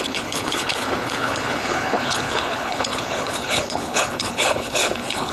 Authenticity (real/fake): fake